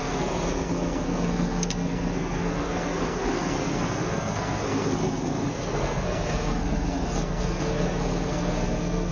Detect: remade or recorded remade